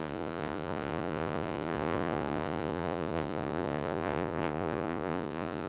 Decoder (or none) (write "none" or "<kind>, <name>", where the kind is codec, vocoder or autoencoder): vocoder, Vocos